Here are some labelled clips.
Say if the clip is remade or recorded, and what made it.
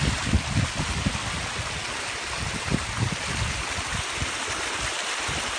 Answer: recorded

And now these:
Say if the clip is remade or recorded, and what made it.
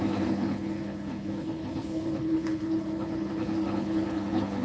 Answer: remade, codec, HILCodec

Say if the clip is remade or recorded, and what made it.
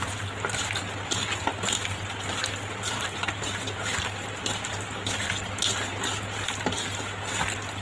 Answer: recorded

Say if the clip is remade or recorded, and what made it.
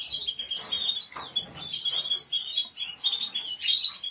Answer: recorded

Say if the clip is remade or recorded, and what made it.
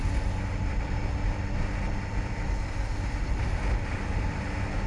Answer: recorded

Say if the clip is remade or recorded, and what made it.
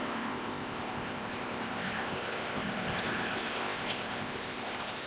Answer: remade, codec, ZipCodec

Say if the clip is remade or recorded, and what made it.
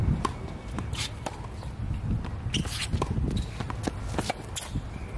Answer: recorded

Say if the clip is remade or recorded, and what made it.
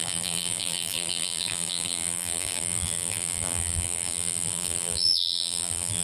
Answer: remade, vocoder, BigVGAN v2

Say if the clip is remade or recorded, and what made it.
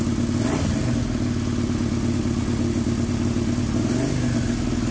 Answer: recorded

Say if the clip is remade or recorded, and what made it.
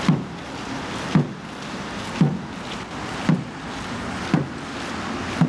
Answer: recorded